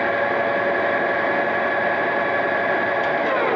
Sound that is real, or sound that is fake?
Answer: real